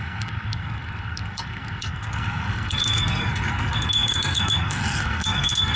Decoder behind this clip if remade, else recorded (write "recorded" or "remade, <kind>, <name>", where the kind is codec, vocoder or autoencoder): remade, codec, SNAC